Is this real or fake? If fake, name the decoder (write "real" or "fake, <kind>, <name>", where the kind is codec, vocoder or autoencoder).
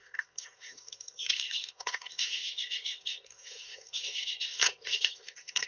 fake, codec, SNAC